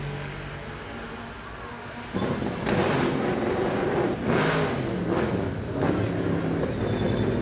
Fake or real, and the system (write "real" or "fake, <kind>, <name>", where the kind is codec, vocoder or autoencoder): real